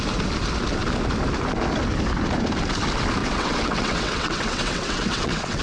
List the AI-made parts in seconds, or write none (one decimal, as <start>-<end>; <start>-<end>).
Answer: 3.2-5.6